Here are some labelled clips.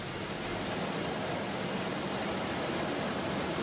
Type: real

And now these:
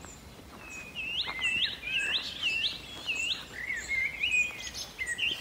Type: real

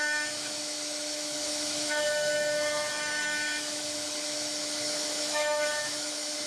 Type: fake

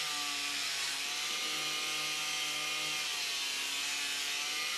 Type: real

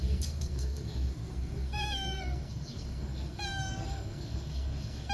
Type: fake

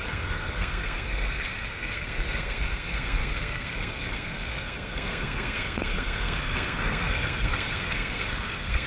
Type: fake